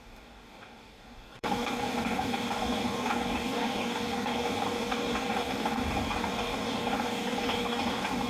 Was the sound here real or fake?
fake